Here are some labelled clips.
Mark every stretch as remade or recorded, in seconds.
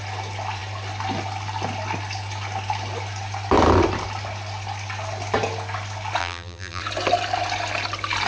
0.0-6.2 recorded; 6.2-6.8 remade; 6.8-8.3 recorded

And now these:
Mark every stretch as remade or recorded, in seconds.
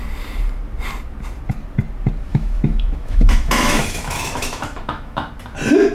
0.0-2.3 recorded; 2.3-5.3 remade; 5.3-5.9 recorded